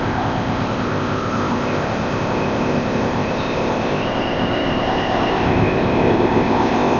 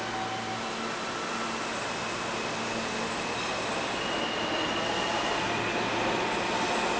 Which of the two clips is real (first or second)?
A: second